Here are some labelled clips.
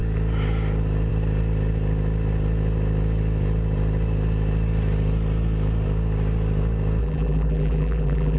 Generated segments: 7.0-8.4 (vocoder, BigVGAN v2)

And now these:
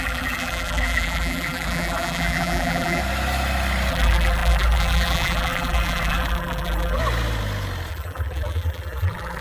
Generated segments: 0.0-3.0 (vocoder, BigVGAN v2); 3.9-7.0; 7.9-9.4

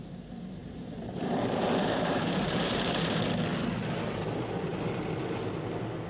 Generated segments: 0.6-3.2 (vocoder, BigVGAN v2)

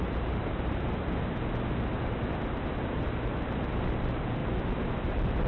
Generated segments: none

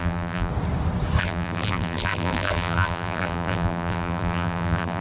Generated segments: 0.0-0.5 (vocoder, BigVGAN v2); 1.2-5.0

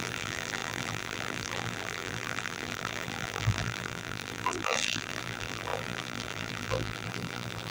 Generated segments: 0.0-7.7 (vocoder, BigVGAN v2)

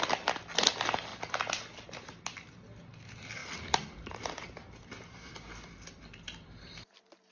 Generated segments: none

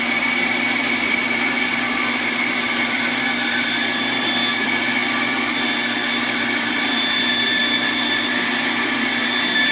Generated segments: 0.0-5.0 (vocoder, BigVGAN v2); 6.2-7.6; 8.3-9.7